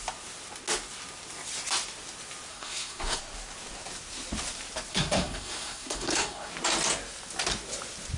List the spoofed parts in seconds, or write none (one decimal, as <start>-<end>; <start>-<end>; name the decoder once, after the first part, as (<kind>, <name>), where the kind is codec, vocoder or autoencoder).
2.5-3.2 (codec, SNAC); 4.9-6.5